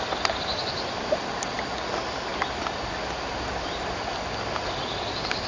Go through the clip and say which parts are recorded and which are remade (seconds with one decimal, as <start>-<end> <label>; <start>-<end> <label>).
0.0-0.5 recorded; 0.5-1.6 remade; 1.6-2.3 recorded; 2.3-3.0 remade; 3.0-5.5 recorded